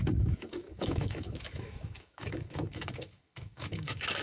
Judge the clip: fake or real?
fake